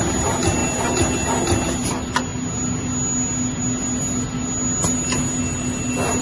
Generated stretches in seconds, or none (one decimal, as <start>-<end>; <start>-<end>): none